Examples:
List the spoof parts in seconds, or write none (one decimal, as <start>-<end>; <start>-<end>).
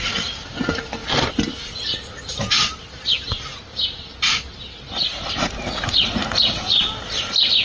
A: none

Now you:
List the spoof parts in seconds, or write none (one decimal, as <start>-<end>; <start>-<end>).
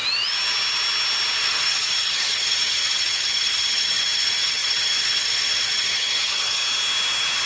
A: 1.4-6.6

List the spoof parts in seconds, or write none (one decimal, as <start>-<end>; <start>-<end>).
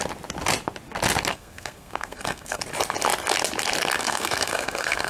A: 1.3-2.6; 4.0-5.1